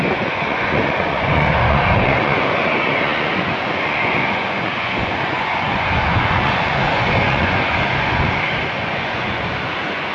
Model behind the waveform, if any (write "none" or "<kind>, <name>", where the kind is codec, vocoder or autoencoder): vocoder, Vocos